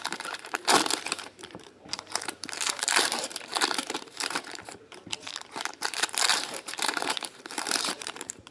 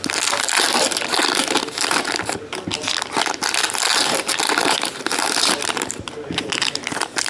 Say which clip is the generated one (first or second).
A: first